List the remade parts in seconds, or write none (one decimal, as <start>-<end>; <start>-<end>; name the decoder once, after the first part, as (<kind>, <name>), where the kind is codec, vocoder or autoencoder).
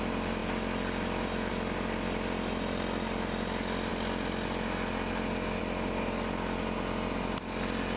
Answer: none